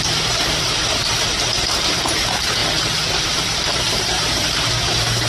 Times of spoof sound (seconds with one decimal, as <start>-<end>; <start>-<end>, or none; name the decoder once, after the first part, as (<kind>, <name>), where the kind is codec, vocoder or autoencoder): 2.6-3.9 (vocoder, BigVGAN v2)